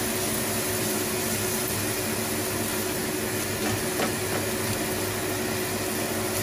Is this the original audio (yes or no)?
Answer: yes